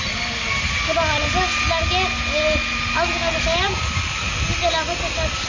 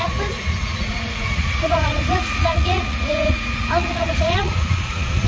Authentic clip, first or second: first